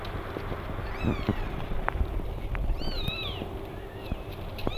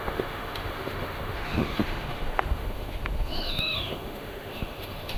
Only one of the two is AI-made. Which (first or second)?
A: second